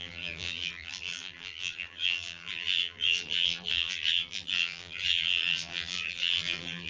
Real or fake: fake